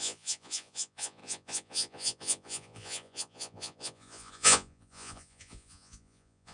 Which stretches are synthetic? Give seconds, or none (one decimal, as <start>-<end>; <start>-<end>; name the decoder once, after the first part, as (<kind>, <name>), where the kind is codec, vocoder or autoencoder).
0.0-6.5 (vocoder, Vocos)